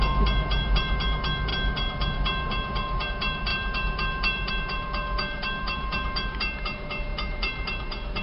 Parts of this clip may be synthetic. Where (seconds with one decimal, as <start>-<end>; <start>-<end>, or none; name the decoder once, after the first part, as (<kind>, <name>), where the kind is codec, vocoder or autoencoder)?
0.0-8.2 (vocoder, BigVGAN v2)